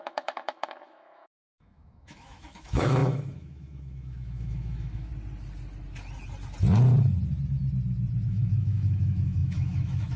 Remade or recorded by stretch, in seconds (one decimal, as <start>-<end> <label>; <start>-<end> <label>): 0.0-5.1 remade; 5.1-8.3 recorded; 8.3-10.2 remade

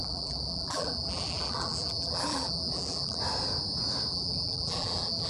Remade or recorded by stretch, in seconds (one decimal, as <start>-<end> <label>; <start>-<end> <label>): 0.0-3.2 remade; 3.2-4.1 recorded; 4.1-5.3 remade

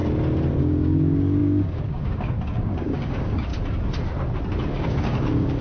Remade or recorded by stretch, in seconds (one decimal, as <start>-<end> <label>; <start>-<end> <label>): 0.0-0.6 recorded; 0.6-3.5 remade; 3.5-4.7 recorded; 4.7-5.6 remade

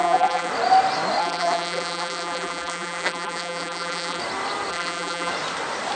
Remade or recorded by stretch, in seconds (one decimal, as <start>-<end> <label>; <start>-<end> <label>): 0.0-0.5 remade; 0.5-1.2 recorded; 1.2-4.2 remade; 4.2-4.7 recorded; 4.7-5.3 remade; 5.3-6.0 recorded